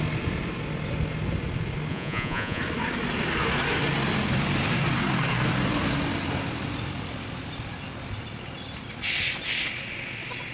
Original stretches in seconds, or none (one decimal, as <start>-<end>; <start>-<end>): 0.0-1.9; 2.6-10.5